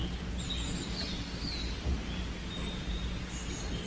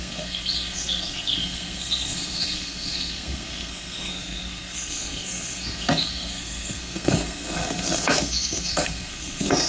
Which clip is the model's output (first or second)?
second